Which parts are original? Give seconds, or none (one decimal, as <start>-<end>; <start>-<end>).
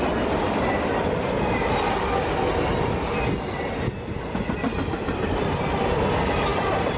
0.0-6.5